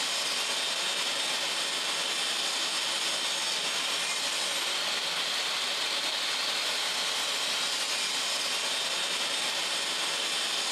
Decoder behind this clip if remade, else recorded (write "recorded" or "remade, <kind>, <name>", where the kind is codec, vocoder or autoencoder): recorded